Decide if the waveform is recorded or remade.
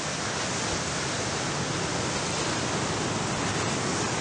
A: recorded